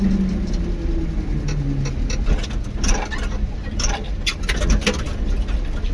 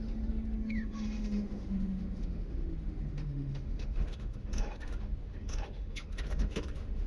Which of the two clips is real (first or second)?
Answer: first